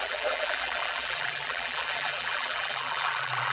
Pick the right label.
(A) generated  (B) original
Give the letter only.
A